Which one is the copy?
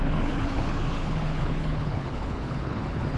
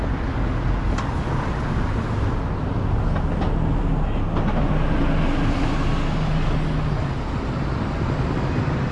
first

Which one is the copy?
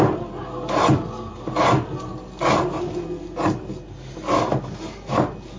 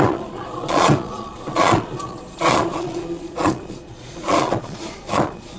second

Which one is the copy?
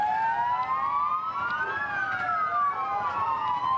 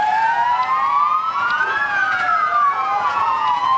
second